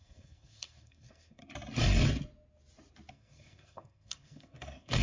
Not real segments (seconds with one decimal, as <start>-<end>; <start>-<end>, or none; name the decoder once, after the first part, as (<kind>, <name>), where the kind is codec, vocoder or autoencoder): 0.0-1.4 (codec, SNAC); 3.1-5.0